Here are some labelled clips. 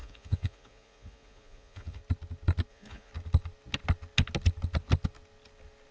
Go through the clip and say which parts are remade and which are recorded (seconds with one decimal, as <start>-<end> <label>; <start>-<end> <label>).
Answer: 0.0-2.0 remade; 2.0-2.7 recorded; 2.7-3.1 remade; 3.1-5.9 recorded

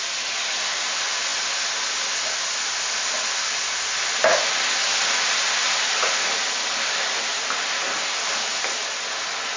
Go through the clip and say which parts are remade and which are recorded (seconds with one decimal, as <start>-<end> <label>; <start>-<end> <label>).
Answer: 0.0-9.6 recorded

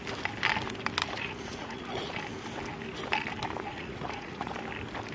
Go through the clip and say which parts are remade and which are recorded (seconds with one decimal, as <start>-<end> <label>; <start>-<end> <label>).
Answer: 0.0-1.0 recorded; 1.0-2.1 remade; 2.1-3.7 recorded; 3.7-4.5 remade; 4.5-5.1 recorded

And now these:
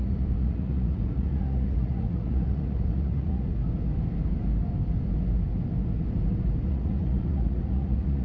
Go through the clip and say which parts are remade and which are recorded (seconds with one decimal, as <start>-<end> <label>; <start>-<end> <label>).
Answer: 0.0-3.6 remade; 3.6-6.7 recorded; 6.7-8.2 remade